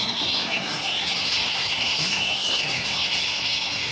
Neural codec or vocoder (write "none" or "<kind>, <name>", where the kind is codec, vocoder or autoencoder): codec, SNAC